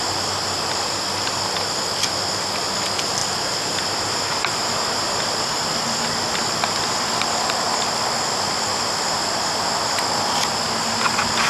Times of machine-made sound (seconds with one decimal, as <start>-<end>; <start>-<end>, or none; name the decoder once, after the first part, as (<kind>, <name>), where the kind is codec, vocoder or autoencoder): 3.2-5.1 (vocoder, BigVGAN v2)